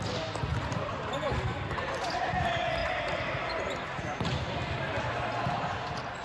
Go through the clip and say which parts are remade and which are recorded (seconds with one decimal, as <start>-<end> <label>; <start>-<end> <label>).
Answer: 0.0-0.5 recorded; 0.5-1.4 remade; 1.4-2.8 recorded; 2.8-4.3 remade; 4.3-6.2 recorded